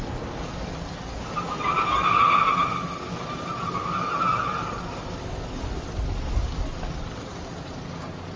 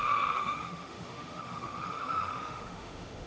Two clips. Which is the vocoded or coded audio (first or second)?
second